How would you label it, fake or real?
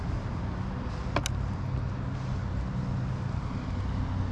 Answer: real